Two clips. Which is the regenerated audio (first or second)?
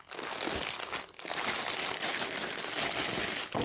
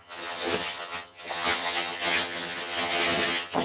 second